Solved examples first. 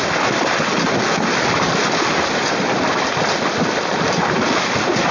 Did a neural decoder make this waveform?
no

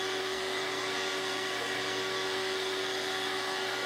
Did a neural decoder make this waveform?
yes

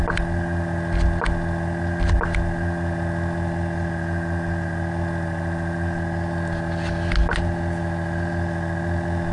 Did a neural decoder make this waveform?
no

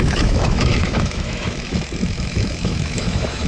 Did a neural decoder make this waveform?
yes